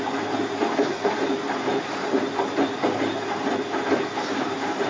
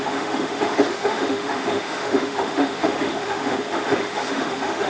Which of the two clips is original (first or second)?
first